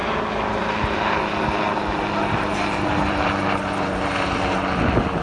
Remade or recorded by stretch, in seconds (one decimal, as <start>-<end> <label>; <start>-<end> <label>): 0.0-5.2 recorded